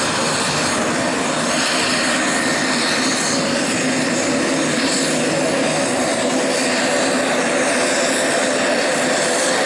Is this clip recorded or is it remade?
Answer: recorded